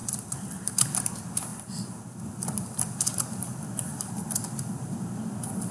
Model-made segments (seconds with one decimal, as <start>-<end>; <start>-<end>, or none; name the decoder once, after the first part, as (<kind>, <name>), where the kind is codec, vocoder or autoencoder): 0.0-0.7 (vocoder, BigVGAN v2); 3.1-4.3